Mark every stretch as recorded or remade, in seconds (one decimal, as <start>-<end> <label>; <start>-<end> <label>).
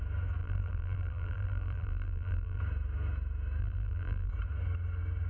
0.0-0.4 recorded; 0.4-2.6 remade; 2.6-3.6 recorded; 3.6-4.3 remade; 4.3-5.3 recorded